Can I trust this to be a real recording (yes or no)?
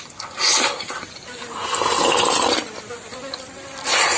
yes